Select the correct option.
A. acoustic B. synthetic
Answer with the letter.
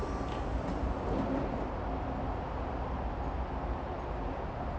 A